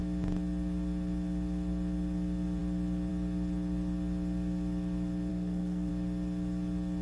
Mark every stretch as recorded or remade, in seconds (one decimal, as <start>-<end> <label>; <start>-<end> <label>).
0.0-5.3 recorded; 5.3-5.9 remade; 5.9-7.0 recorded